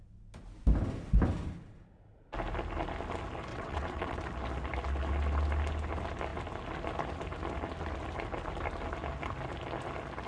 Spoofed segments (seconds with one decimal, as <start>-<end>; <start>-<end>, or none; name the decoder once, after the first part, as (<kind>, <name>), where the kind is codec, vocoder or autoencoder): 3.5-4.2 (vocoder, WaveNeXt)